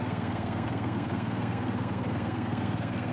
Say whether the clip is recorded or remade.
remade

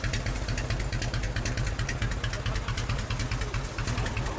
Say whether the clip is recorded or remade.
recorded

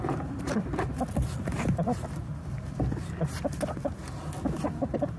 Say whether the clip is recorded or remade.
recorded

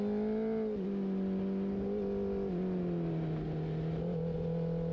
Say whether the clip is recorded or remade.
recorded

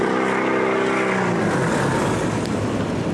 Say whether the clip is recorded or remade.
recorded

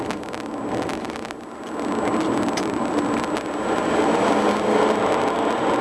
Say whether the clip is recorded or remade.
recorded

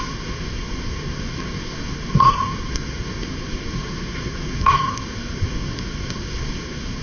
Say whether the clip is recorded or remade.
remade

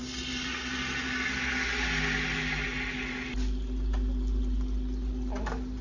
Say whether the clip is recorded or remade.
recorded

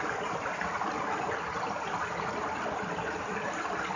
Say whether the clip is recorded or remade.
recorded